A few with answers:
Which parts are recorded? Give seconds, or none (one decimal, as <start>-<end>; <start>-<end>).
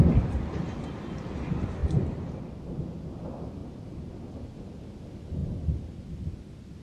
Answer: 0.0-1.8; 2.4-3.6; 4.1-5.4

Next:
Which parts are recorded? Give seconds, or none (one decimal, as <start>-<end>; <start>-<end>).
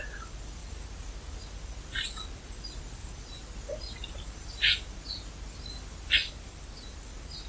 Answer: 0.0-7.5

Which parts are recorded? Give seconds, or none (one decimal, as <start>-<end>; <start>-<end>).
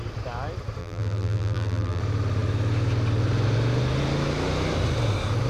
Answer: 0.0-0.8; 2.0-5.5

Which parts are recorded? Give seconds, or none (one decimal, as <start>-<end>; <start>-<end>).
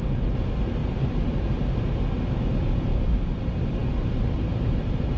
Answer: 0.0-5.2